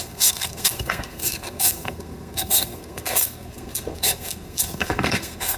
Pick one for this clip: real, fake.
fake